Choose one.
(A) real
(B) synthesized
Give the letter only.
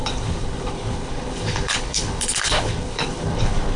B